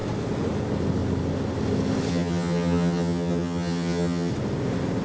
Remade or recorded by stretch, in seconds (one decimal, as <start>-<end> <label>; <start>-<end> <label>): 0.0-2.1 recorded; 2.1-4.3 remade; 4.3-5.0 recorded